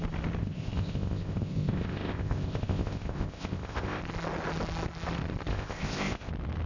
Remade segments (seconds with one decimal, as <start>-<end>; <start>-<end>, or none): 0.4-4.0; 5.5-6.3